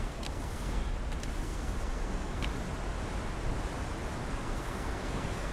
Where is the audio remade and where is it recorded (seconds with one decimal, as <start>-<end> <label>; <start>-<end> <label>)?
0.0-0.8 remade; 0.8-1.3 recorded; 1.3-2.5 remade; 2.5-4.3 recorded; 4.3-5.5 remade